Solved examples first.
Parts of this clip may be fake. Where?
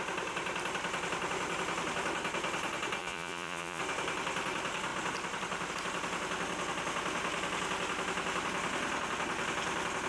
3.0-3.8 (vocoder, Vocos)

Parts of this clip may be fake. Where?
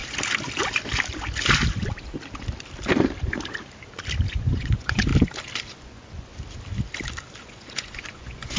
4.3-5.1 (vocoder, Vocos); 5.7-6.3; 7.4-8.6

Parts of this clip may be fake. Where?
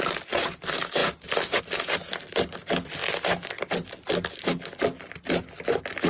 none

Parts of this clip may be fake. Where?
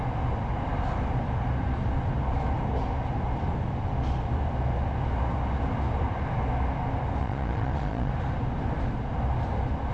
7.2-8.1 (vocoder, Vocos)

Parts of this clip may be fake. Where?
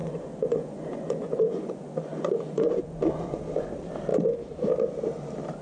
0.0-3.4 (vocoder, Vocos)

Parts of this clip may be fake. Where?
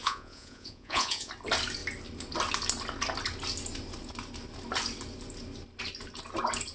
0.0-1.3 (vocoder, Vocos)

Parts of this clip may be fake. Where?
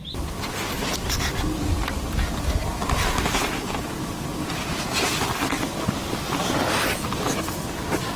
none